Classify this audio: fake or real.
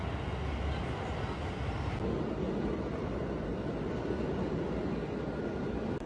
real